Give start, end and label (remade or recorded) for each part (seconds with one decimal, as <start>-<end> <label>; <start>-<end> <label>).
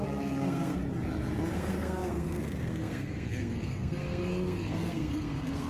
0.0-0.8 remade; 0.8-1.5 recorded; 1.5-5.7 remade